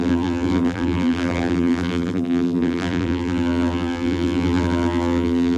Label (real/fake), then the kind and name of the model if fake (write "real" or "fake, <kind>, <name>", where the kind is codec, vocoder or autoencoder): fake, vocoder, BigVGAN v2